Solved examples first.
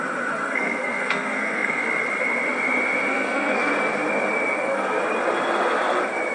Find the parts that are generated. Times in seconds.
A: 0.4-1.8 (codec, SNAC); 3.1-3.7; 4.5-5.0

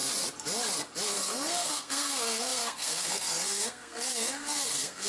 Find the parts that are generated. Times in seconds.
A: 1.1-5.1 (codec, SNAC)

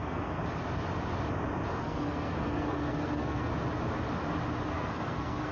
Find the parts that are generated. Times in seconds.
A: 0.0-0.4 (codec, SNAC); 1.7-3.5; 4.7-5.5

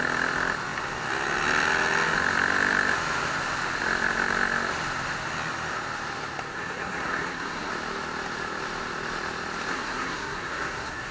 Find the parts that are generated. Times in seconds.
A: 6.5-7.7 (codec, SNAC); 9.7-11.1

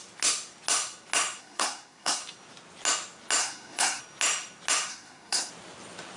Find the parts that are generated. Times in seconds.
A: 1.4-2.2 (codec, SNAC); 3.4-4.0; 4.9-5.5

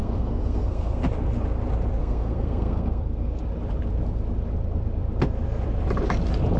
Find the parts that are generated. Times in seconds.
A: 0.0-1.0 (codec, SNAC); 2.0-3.4

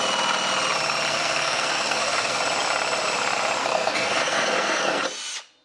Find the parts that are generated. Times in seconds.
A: 1.1-2.4 (codec, SNAC); 3.6-5.0